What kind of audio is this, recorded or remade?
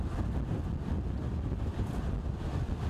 recorded